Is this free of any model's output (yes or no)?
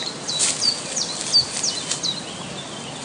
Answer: yes